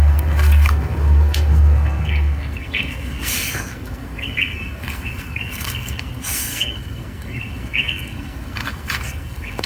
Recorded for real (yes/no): no